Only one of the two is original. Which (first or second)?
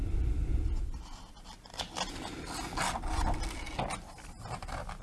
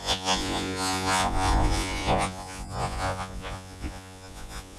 first